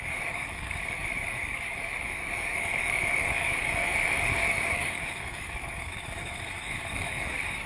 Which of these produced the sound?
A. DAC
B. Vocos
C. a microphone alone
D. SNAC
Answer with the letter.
A